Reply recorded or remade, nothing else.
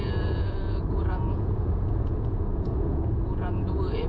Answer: remade